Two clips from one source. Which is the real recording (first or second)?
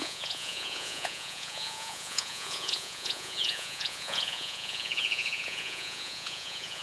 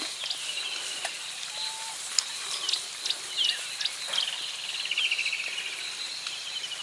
second